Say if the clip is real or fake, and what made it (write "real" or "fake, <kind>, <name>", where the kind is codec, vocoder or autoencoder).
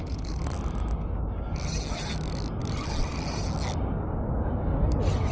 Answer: real